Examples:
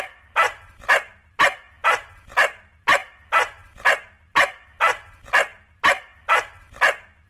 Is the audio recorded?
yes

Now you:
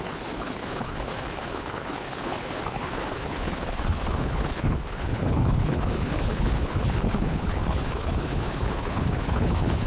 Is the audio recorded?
no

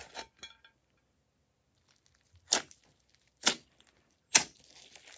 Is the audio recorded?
yes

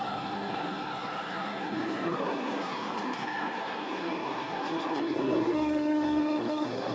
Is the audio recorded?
no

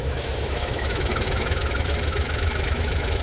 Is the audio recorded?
no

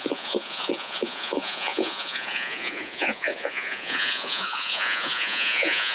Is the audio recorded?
no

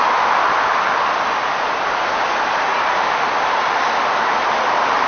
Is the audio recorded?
yes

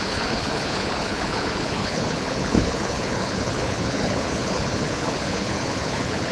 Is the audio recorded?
no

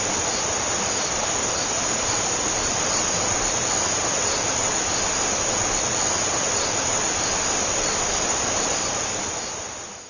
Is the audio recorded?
yes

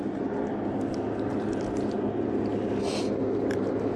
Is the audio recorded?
yes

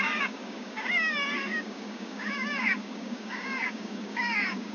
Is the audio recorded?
no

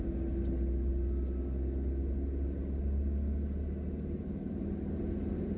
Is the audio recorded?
yes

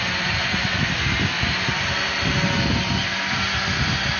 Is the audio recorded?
yes